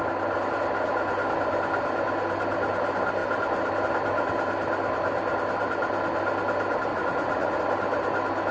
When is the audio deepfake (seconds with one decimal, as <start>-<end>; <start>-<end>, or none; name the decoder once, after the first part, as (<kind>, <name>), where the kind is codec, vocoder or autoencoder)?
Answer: 6.9-7.6 (vocoder, Vocos)